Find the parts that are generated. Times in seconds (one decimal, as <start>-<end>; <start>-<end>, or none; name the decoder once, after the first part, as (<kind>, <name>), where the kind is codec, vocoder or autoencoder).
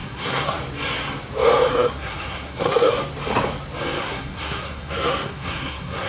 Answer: 0.0-0.6 (codec, SNAC); 1.7-3.0; 4.0-6.1